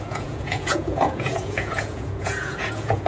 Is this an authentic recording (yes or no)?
no